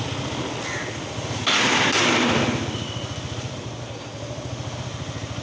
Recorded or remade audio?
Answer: recorded